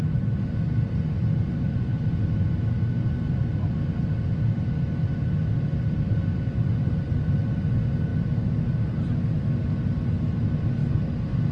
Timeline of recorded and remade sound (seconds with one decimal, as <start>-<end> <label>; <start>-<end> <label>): 0.0-11.5 recorded